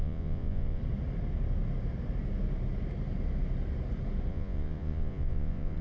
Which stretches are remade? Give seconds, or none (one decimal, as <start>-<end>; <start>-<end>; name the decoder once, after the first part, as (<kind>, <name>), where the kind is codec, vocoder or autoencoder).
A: 0.0-0.8 (vocoder, Vocos); 4.3-5.8